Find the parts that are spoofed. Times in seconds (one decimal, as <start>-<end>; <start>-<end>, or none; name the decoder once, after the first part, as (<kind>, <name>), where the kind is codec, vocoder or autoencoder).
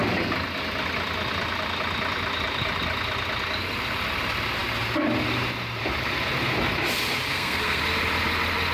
7.3-7.8 (codec, SNAC)